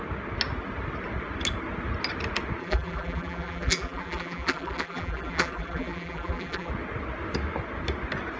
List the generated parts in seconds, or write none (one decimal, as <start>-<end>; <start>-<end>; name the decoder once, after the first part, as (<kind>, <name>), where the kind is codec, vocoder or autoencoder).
2.6-6.7 (vocoder, BigVGAN v2)